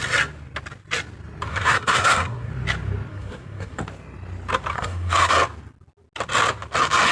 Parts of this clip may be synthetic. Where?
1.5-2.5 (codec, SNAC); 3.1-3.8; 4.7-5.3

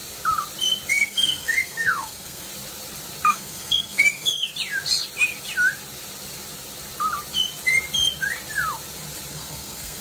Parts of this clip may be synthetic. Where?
0.9-2.5 (codec, SNAC); 3.3-4.5; 9.3-10.0

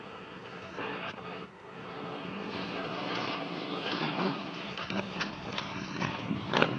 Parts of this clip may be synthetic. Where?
0.0-6.8 (codec, SNAC)

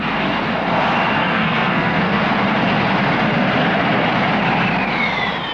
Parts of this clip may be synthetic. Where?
1.2-2.2 (codec, SNAC)